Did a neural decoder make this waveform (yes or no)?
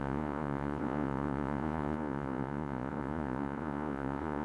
yes